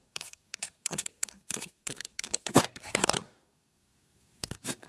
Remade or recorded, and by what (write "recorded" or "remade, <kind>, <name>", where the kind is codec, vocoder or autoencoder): remade, codec, SNAC